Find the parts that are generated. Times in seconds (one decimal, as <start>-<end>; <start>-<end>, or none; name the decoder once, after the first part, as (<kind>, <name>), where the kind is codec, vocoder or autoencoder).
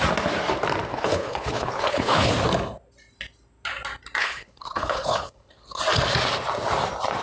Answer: 0.9-2.3 (codec, HILCodec); 4.2-5.8